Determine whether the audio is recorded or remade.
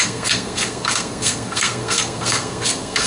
remade